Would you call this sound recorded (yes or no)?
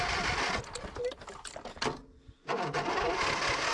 yes